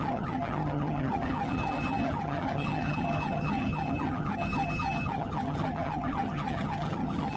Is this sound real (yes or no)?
no